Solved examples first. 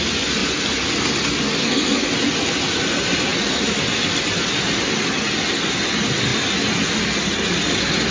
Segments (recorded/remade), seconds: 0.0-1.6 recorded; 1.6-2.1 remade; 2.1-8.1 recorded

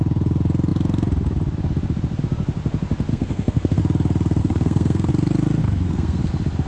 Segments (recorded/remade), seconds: 0.0-3.1 recorded; 3.1-3.8 remade; 3.8-4.4 recorded; 4.4-5.1 remade; 5.1-5.6 recorded; 5.6-6.3 remade; 6.3-6.7 recorded